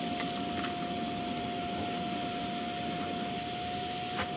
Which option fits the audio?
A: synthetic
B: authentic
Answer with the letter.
B